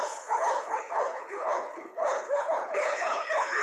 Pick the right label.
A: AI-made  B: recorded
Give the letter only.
A